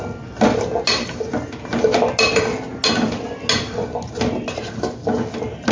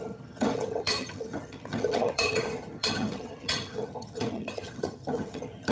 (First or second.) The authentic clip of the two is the first